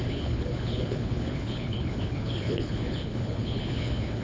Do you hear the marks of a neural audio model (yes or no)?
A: yes